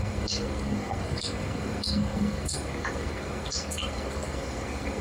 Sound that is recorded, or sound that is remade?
remade